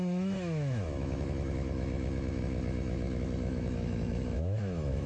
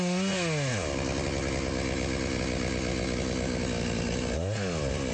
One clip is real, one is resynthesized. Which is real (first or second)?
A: second